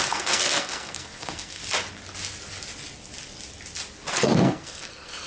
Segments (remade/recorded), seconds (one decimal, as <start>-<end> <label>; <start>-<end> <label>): 0.0-1.6 remade; 1.6-4.1 recorded; 4.1-5.3 remade